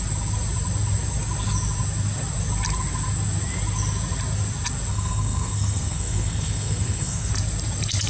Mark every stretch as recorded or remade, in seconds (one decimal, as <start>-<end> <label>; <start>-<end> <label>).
0.0-4.9 recorded; 4.9-7.3 remade; 7.3-8.1 recorded